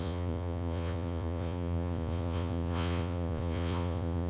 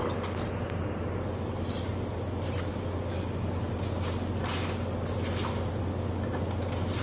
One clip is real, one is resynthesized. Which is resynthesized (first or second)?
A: first